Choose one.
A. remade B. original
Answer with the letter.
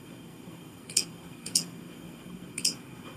A